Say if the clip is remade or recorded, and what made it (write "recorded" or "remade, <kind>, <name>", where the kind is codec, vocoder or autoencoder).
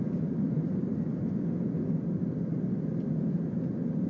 recorded